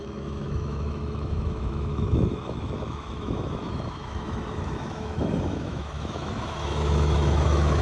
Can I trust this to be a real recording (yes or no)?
no